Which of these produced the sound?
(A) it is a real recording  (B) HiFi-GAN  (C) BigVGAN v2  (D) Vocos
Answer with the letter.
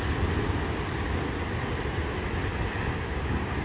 A